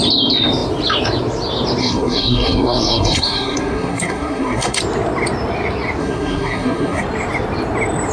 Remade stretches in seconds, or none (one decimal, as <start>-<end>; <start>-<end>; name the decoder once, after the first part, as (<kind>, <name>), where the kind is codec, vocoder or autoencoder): 1.8-4.8 (codec, SNAC); 6.0-7.0